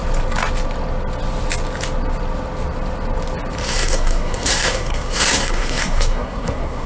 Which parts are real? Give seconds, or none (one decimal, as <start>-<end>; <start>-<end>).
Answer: 0.0-3.6